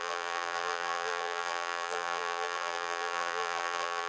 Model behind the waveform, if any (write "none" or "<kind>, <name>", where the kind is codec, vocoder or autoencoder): vocoder, BigVGAN v2